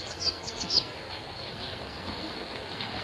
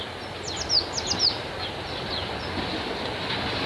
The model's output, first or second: first